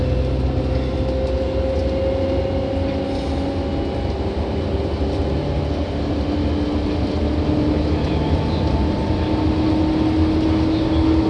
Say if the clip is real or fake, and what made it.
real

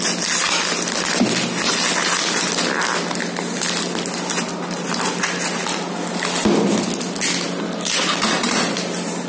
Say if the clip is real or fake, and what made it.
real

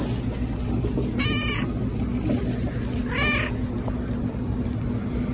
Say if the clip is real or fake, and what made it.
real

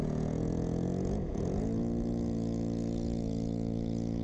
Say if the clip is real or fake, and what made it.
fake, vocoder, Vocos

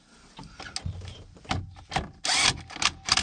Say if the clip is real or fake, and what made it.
real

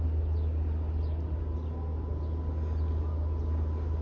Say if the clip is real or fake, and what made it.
real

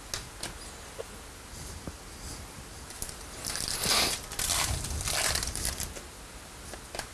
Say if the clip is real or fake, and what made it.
real